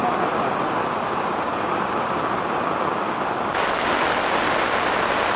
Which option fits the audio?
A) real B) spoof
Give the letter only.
A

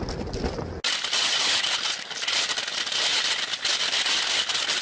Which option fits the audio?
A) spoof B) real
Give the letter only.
B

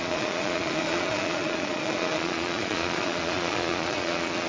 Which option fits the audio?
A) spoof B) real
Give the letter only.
A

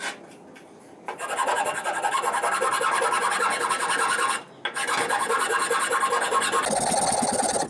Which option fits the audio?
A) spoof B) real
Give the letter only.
B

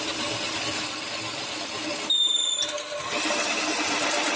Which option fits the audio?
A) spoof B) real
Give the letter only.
B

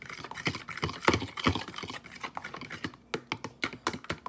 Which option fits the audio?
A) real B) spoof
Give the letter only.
A